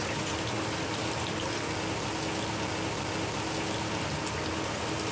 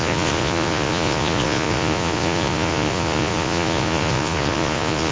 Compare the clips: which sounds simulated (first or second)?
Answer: second